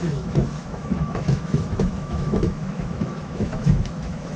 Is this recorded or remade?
remade